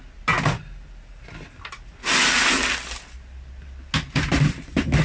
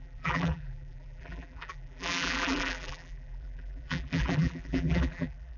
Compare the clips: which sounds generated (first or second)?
second